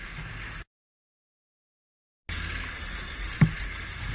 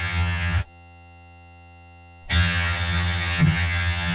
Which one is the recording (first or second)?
first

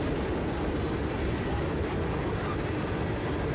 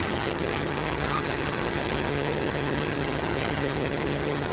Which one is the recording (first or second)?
first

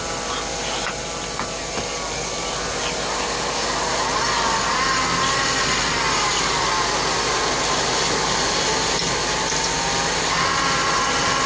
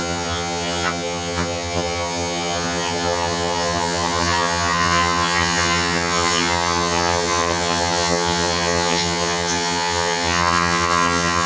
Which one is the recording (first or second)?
first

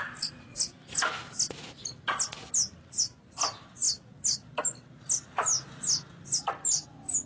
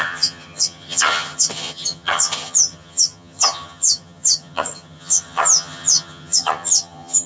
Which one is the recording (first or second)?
first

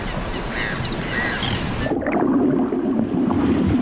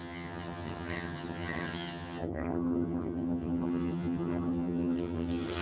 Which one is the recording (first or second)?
first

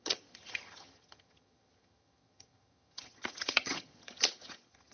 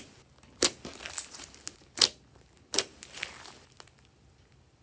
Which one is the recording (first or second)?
second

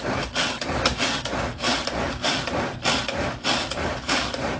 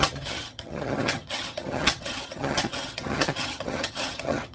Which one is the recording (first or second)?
first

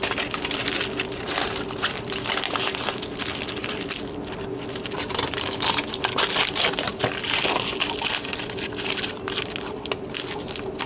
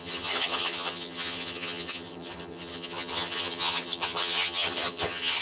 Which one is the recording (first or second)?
first